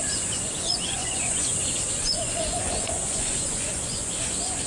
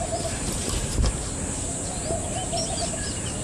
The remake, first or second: first